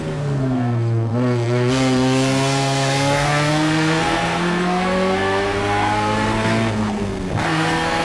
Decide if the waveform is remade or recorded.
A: remade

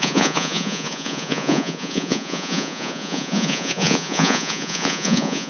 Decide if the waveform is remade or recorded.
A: remade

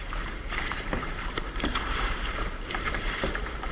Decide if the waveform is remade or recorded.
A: remade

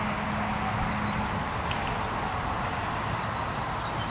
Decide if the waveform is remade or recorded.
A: recorded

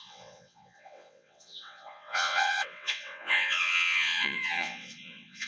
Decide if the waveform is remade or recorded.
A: remade